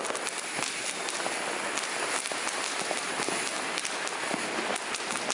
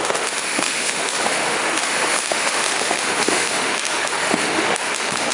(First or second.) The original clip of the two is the first